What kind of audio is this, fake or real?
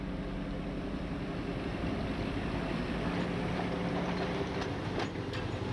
real